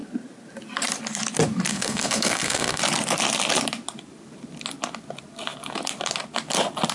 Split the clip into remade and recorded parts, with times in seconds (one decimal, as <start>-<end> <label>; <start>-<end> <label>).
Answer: 0.0-1.7 recorded; 1.7-2.8 remade; 2.8-6.9 recorded